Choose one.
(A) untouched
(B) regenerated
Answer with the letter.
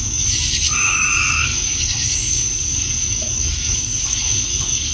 B